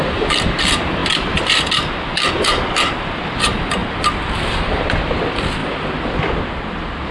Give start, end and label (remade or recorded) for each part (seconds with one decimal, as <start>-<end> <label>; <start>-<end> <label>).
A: 0.0-5.6 remade; 5.6-6.3 recorded; 6.3-7.1 remade